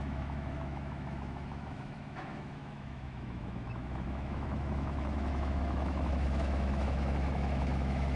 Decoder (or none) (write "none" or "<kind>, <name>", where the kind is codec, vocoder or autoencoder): autoencoder, DAC-VAE